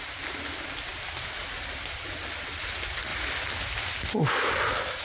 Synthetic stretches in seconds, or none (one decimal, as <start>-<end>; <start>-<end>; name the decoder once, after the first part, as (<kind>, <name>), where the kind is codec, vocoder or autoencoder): none